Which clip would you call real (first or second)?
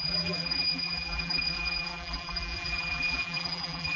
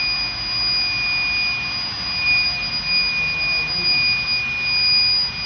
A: second